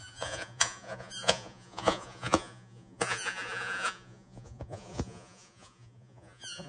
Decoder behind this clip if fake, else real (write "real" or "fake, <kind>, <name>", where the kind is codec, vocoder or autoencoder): fake, vocoder, Vocos